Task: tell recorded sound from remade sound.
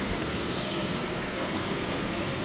remade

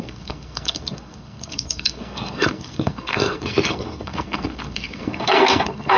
remade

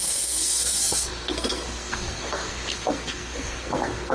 remade